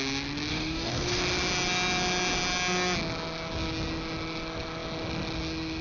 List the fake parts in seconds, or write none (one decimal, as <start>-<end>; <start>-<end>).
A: 0.5-1.2